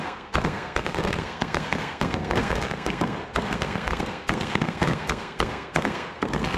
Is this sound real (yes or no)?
no